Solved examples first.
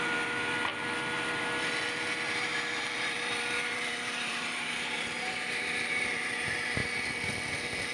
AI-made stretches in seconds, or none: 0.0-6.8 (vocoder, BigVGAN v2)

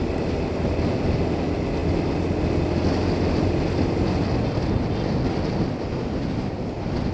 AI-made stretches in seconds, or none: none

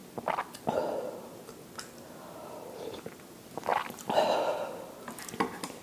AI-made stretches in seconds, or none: 3.7-4.9 (vocoder, BigVGAN v2)

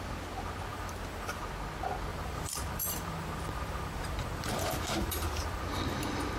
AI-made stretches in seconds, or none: 0.7-1.4 (vocoder, BigVGAN v2); 2.1-5.6

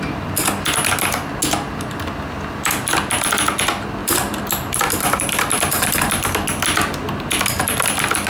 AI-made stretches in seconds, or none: 4.0-6.0 (vocoder, BigVGAN v2)

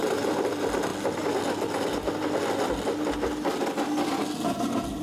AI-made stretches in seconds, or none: none

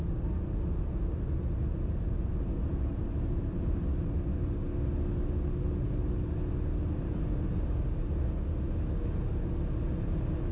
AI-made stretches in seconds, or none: 2.2-3.8 (vocoder, BigVGAN v2)

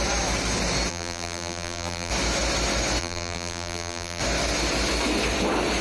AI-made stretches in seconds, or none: 0.9-2.1 (vocoder, BigVGAN v2); 3.0-4.2